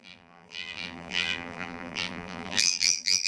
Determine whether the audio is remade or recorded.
remade